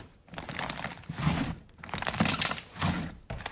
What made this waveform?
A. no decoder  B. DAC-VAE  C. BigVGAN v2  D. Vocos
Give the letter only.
C